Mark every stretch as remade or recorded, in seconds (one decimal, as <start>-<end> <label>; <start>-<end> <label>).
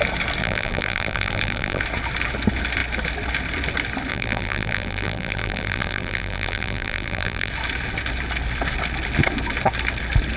0.0-0.4 recorded; 0.4-1.8 remade; 1.8-4.1 recorded; 4.1-7.5 remade; 7.5-10.4 recorded